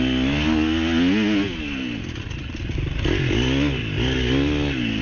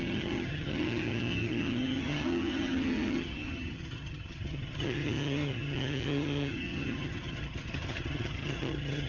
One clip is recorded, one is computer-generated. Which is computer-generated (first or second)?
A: second